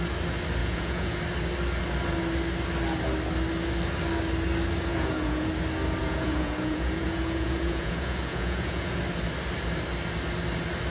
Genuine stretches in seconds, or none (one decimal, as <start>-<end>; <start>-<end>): 0.0-0.6; 1.2-4.9; 5.5-6.0; 9.0-10.9